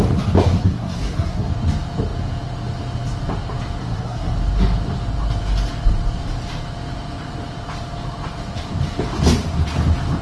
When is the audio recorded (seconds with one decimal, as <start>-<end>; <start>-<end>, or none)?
0.0-0.6; 1.5-3.8; 4.3-10.2